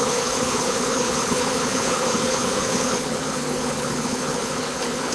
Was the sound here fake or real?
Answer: fake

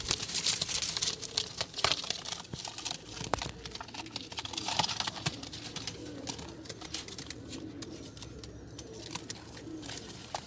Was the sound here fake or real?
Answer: real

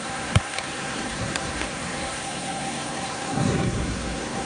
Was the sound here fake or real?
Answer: fake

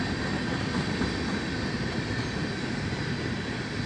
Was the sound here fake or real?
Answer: real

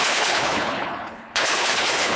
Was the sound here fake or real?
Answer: fake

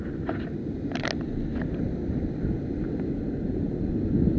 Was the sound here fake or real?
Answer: real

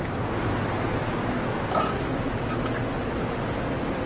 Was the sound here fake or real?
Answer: real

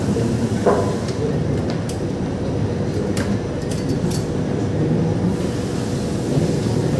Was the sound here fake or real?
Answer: real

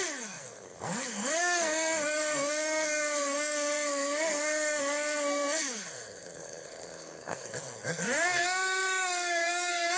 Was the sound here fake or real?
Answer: fake